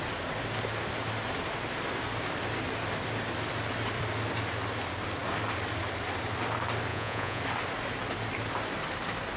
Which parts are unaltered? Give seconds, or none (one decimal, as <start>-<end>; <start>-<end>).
0.0-6.9; 7.4-9.4